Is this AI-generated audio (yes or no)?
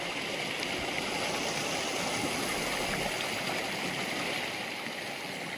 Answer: no